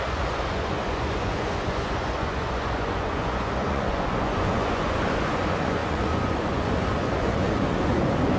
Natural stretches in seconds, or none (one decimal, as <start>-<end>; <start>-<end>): none